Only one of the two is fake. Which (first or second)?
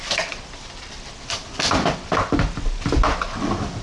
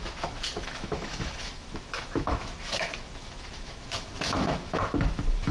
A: second